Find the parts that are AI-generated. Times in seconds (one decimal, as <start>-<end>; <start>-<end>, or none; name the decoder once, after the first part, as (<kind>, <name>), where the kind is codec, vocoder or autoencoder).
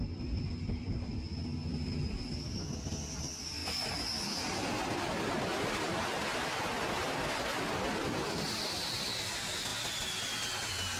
0.0-1.4 (vocoder, BigVGAN v2); 2.8-3.6; 4.7-9.7